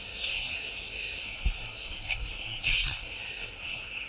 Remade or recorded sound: remade